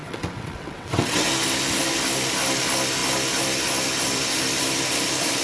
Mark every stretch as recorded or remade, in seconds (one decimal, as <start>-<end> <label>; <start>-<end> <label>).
0.0-1.3 remade; 1.3-5.4 recorded